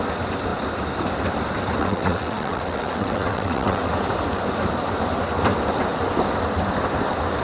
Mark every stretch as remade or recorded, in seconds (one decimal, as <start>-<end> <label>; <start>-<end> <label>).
0.0-1.8 recorded; 1.8-3.9 remade; 3.9-7.4 recorded